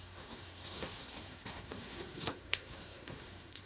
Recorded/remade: remade